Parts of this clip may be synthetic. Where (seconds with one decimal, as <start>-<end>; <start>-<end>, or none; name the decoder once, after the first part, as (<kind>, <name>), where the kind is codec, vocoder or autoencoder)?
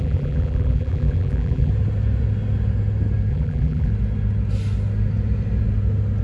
0.0-1.7 (vocoder, BigVGAN v2); 3.3-3.9